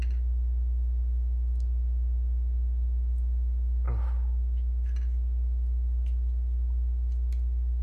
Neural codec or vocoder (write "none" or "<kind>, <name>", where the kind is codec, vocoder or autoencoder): none